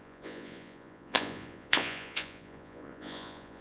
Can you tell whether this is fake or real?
fake